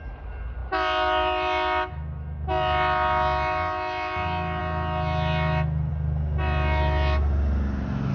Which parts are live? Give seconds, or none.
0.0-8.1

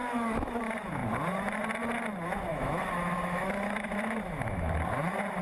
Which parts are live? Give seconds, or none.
0.6-2.5; 4.8-5.4

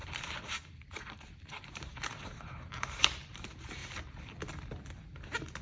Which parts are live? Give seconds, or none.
3.8-5.0

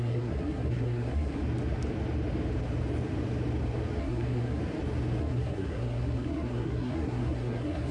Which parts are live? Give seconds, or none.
1.4-4.0; 4.6-5.2

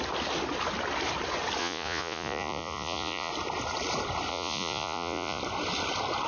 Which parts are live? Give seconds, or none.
0.0-1.6; 3.3-4.3; 5.4-6.3